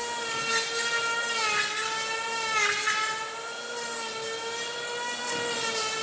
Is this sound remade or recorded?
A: recorded